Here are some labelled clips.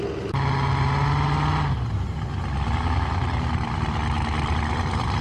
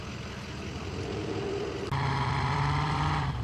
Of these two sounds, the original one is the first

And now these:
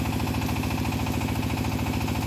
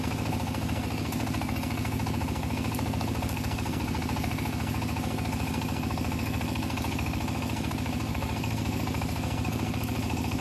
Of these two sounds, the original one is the first